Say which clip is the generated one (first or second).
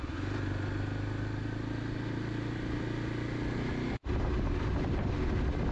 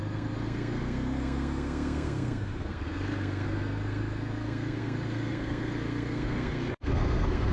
second